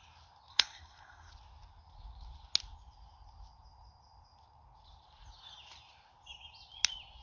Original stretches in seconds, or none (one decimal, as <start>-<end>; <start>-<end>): 0.0-0.5; 1.3-7.2